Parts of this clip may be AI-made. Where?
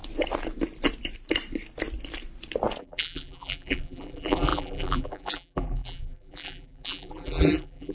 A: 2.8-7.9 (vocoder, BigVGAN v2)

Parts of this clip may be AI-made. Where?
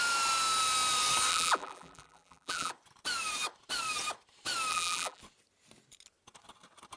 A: 1.3-2.7 (vocoder, BigVGAN v2); 4.7-5.2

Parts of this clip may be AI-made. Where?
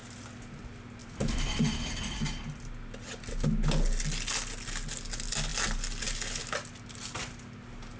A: 1.0-2.4 (vocoder, BigVGAN v2)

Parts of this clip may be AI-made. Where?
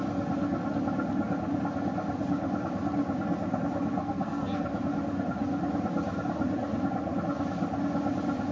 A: 4.0-4.7 (codec, SNAC)